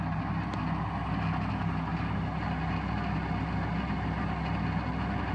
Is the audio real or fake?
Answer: real